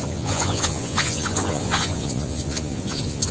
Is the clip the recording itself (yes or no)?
no